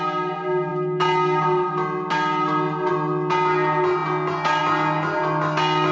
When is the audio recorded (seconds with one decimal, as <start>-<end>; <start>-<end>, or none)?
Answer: 0.0-5.9